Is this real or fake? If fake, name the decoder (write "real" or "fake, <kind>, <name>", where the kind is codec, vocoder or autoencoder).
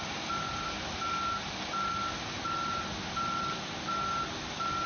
real